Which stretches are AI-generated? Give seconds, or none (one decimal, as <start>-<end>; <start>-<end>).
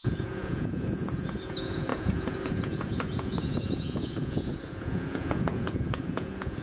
0.0-6.6